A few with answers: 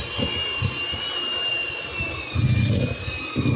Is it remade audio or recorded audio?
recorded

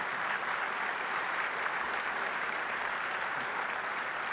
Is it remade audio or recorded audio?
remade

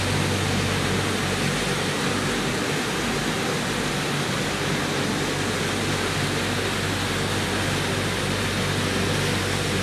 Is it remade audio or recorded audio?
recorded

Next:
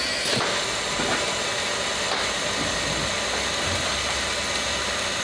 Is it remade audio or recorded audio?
recorded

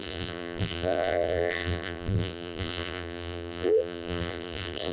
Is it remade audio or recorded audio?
remade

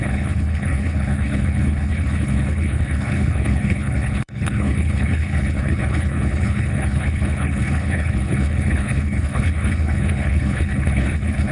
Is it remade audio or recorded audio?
remade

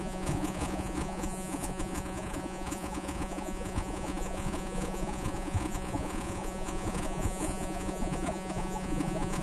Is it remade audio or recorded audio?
remade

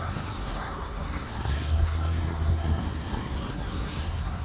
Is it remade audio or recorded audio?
remade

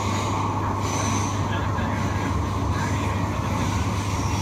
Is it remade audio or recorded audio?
recorded